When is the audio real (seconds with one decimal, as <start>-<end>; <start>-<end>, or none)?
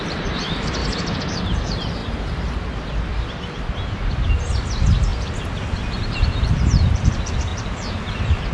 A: 2.0-4.5; 5.1-6.0